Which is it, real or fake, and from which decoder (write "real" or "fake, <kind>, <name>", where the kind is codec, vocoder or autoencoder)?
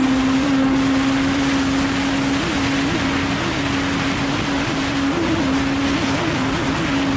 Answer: real